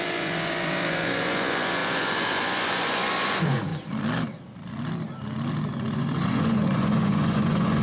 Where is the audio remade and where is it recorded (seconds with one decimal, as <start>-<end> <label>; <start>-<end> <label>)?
0.0-3.7 remade; 3.7-5.9 recorded; 5.9-7.8 remade